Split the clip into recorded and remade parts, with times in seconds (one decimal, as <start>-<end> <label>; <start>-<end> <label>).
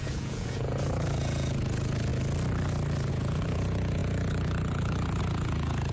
0.0-2.1 remade; 2.1-3.1 recorded; 3.1-5.9 remade